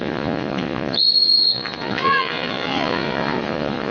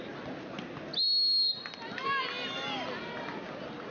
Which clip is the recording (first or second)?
second